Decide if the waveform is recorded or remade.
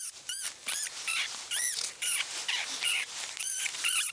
remade